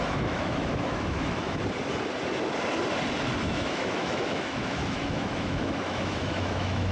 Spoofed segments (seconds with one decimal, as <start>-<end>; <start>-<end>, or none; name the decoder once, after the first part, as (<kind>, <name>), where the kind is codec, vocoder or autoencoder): 0.0-1.6 (autoencoder, DAC-VAE); 3.4-6.9